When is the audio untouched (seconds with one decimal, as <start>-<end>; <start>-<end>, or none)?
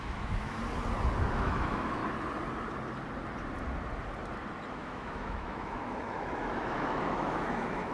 0.6-1.2; 2.0-4.7